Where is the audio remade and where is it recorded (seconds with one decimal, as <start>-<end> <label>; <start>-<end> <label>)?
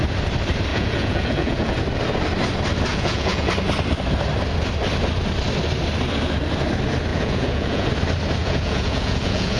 0.0-0.7 recorded; 0.7-1.7 remade; 1.7-2.9 recorded; 2.9-3.5 remade; 3.5-7.1 recorded; 7.1-7.9 remade; 7.9-8.4 recorded; 8.4-9.6 remade